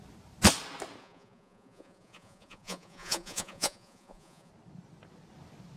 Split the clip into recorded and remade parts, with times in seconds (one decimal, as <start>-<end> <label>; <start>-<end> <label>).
0.0-1.0 recorded; 1.0-4.5 remade; 4.5-5.8 recorded